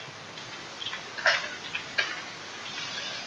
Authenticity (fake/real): real